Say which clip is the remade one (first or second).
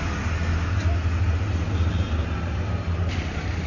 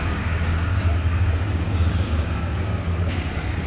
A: second